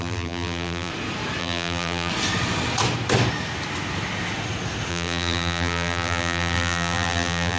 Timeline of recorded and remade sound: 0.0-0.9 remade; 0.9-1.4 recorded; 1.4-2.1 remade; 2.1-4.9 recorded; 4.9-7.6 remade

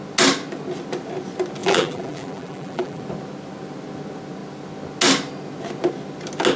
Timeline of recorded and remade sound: 0.0-1.6 recorded; 1.6-3.0 remade; 3.0-6.6 recorded

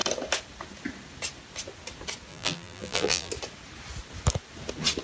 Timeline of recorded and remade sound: 0.0-2.3 recorded; 2.3-3.3 remade; 3.3-5.0 recorded

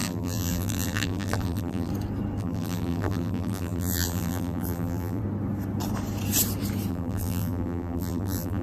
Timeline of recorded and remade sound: 0.0-1.9 remade; 1.9-2.4 recorded; 2.4-5.2 remade; 5.2-6.9 recorded; 6.9-8.6 remade

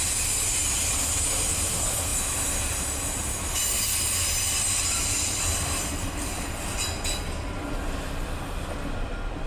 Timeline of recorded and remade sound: 0.0-9.5 recorded